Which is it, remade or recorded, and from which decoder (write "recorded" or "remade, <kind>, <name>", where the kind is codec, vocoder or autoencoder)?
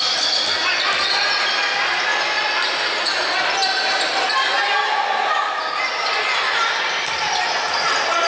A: recorded